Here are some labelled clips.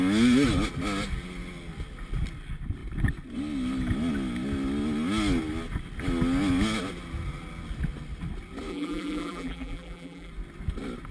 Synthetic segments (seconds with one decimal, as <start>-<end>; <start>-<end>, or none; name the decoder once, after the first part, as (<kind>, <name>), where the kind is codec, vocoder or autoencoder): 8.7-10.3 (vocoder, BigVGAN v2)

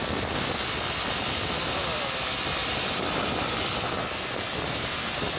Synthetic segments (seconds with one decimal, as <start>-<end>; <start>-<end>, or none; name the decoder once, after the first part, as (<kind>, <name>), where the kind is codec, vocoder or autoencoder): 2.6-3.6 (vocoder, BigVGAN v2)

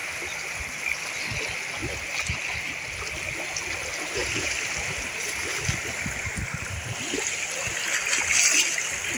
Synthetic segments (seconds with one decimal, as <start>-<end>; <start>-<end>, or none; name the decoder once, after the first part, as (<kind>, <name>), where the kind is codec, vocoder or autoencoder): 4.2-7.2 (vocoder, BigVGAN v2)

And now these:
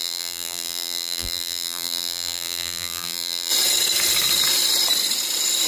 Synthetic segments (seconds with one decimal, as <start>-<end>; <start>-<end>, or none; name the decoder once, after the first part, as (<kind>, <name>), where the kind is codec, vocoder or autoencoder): 0.0-3.5 (vocoder, BigVGAN v2)

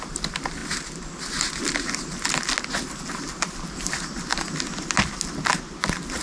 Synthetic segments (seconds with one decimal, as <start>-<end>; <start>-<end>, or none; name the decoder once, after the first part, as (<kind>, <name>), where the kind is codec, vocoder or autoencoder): none

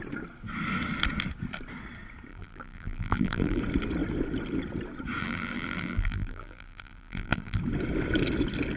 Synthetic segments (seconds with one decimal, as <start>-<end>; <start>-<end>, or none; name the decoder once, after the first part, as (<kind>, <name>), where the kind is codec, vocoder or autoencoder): 2.3-3.6 (vocoder, BigVGAN v2); 5.2-7.6